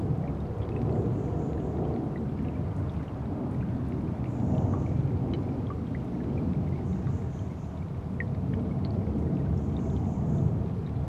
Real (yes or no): yes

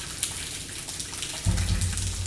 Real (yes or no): yes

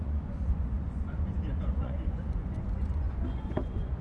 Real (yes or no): no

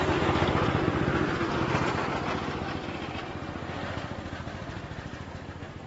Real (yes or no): yes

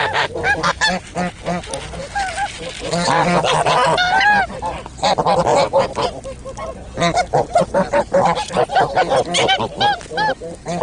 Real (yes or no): yes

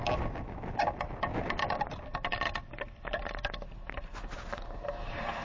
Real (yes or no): yes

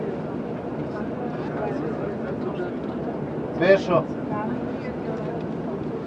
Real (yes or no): yes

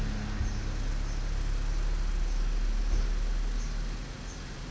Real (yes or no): yes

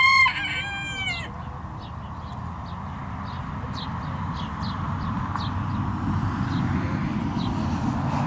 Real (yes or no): yes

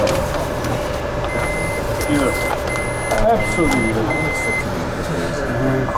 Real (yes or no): yes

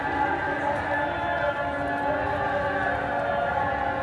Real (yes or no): yes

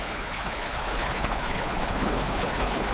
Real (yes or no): no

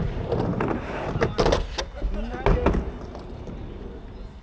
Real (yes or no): yes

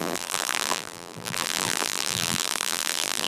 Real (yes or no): no